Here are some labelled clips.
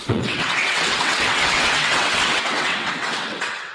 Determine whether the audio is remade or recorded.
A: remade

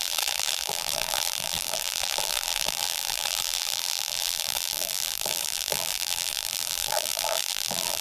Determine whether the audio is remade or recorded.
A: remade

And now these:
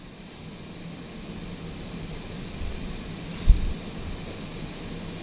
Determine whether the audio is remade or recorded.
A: recorded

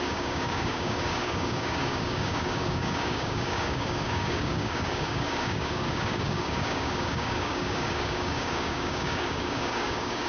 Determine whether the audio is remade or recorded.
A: remade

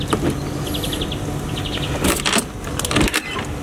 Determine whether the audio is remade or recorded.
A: recorded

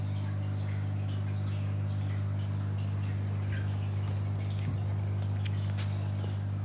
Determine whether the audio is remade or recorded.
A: recorded